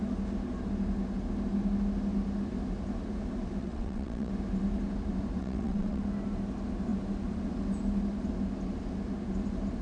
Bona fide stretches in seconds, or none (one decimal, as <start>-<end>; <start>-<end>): 0.0-3.6; 4.3-5.4; 6.0-9.8